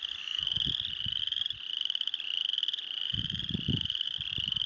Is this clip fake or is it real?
real